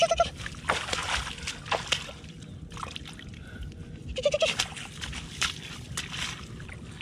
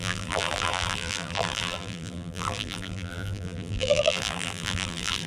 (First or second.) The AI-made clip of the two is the second